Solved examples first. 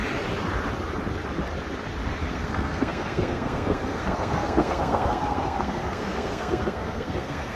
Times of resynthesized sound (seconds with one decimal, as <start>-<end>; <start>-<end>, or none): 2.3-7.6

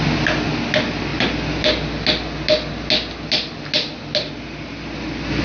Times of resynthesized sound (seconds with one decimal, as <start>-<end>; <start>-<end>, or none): none

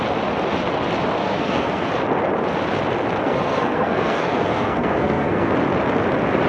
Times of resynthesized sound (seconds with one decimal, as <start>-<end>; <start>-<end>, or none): 1.2-1.9; 3.2-5.5

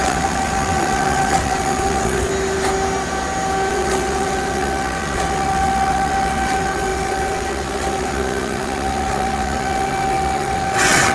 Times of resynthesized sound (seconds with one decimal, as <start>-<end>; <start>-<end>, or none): 0.0-2.3; 3.7-11.1

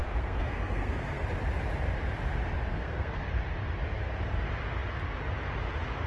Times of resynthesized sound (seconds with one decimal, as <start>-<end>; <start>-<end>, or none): 0.0-1.2; 2.7-3.3

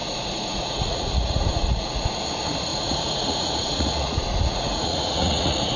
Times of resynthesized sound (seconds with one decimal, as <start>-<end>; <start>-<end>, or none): 0.0-2.1; 2.7-5.8

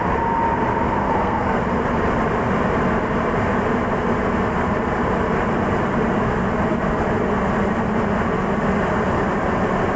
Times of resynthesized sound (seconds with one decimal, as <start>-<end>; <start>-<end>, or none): 1.0-1.6